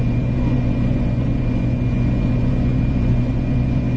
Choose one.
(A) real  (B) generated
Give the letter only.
B